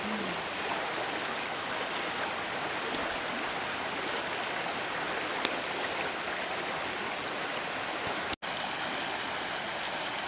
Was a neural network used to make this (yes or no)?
no